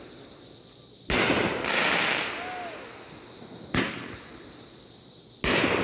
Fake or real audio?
real